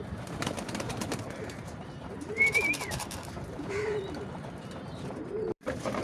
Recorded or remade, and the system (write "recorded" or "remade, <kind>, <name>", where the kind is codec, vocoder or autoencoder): remade, vocoder, BigVGAN v2